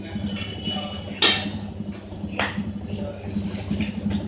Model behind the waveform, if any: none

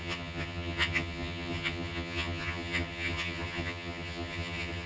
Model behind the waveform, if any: vocoder, HiFi-GAN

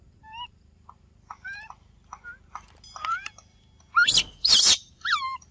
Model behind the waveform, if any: vocoder, BigVGAN v2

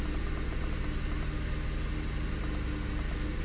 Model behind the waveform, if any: none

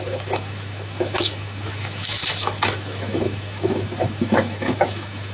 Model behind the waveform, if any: autoencoder, DAC-VAE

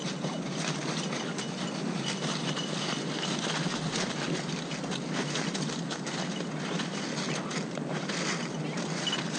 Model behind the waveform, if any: none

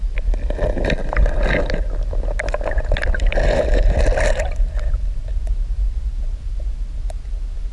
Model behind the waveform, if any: none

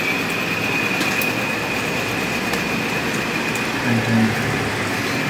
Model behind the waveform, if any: none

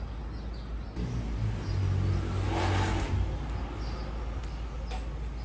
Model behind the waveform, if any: none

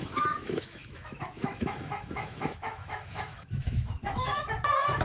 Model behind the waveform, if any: autoencoder, DAC-VAE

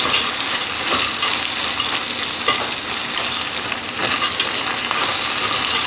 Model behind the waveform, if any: none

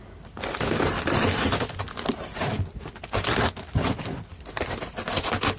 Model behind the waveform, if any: none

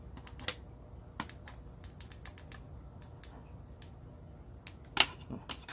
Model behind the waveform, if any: none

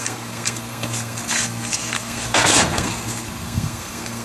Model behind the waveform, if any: codec, SNAC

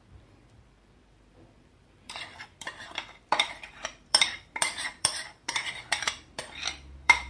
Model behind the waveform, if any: vocoder, BigVGAN v2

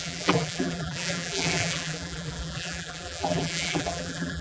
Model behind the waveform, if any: vocoder, BigVGAN v2